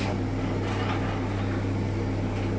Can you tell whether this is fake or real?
real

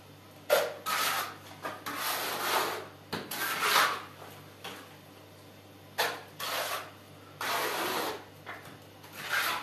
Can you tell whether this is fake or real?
real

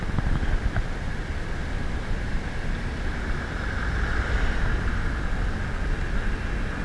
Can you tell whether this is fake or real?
real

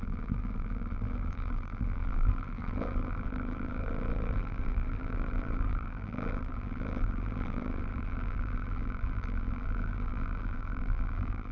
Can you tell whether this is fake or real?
fake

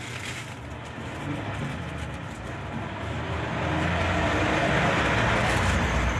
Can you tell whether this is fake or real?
real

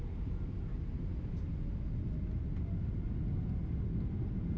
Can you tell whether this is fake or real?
real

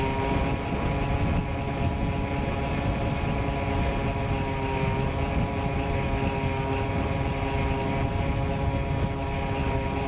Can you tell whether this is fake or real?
real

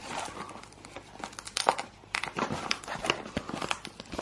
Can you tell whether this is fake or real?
real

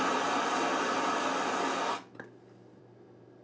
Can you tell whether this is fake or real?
real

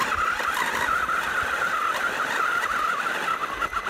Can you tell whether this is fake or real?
real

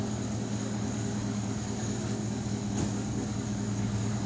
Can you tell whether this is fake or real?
fake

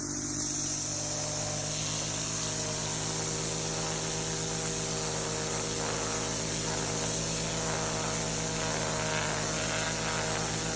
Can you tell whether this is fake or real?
real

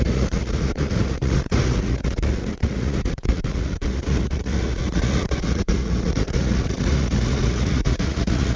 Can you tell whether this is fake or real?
fake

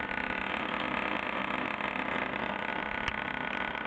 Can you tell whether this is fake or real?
real